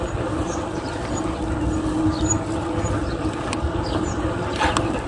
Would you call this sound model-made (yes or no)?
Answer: no